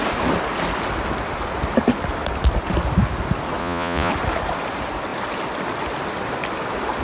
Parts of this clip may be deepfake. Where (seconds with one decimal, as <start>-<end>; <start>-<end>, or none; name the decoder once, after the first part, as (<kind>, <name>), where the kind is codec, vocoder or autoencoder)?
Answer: 3.6-4.1 (vocoder, Vocos)